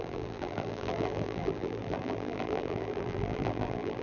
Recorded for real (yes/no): no